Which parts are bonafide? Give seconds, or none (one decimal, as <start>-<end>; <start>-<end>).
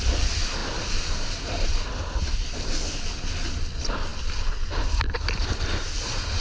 0.0-6.4